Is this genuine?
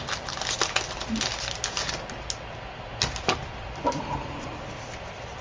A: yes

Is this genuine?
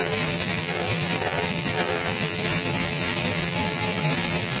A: no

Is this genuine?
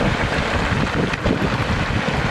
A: yes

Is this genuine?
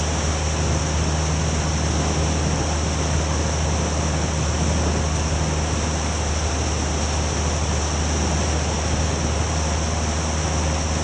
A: yes